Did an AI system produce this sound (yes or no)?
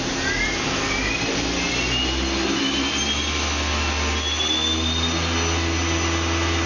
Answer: no